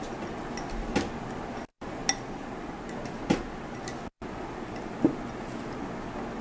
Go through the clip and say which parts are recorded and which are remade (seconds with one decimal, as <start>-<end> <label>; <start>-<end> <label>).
0.0-6.4 recorded